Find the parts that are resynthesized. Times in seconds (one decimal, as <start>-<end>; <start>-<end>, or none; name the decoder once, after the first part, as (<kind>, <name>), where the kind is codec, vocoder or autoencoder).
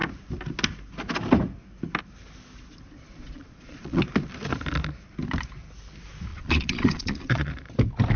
3.2-4.0 (vocoder, Vocos); 6.3-7.5